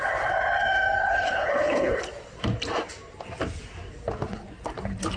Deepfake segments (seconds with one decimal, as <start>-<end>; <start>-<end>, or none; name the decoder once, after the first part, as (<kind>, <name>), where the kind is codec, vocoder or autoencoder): 1.0-2.0 (codec, HILCodec)